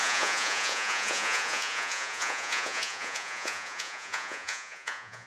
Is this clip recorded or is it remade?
remade